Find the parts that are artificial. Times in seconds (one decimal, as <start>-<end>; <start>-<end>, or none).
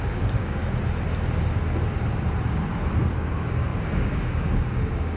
0.0-0.6; 3.2-5.2